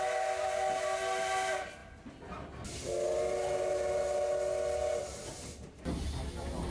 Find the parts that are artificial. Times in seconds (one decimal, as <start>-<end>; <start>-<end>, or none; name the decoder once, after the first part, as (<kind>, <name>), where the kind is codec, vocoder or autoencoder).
none